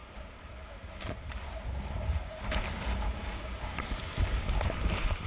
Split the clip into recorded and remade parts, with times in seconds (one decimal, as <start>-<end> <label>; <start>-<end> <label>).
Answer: 0.0-2.1 recorded; 2.1-2.6 remade; 2.6-4.6 recorded; 4.6-5.3 remade